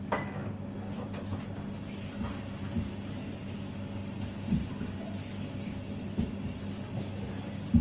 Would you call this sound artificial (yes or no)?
no